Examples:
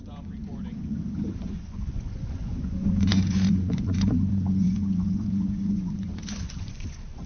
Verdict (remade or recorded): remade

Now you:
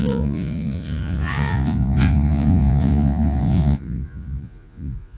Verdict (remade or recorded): remade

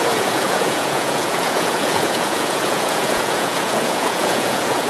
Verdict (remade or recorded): remade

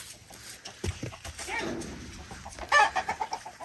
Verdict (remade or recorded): recorded